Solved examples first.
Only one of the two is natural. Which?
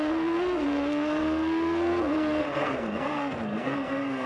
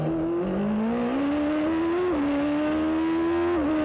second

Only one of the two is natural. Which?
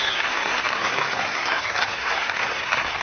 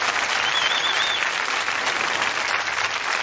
second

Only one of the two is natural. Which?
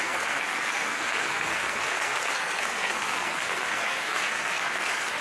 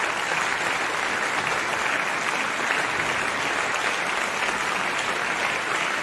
second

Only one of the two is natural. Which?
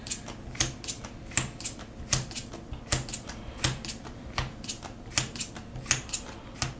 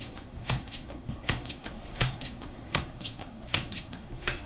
first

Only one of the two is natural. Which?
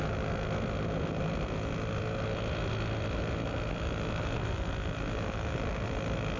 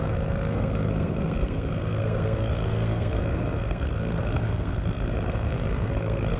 first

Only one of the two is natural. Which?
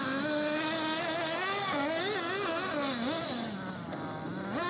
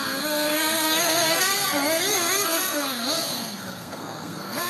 first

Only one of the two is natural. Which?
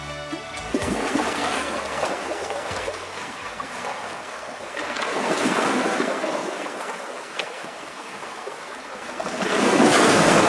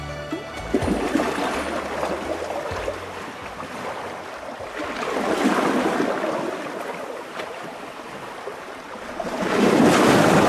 second